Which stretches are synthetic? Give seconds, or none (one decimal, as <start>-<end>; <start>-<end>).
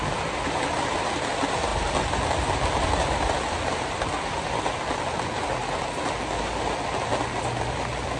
none